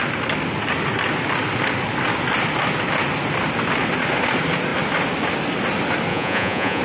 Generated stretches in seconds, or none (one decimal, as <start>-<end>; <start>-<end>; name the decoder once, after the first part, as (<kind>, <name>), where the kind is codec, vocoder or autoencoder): 6.1-6.8 (vocoder, Vocos)